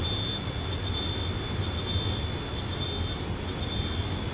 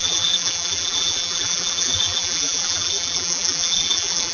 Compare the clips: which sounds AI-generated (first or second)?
second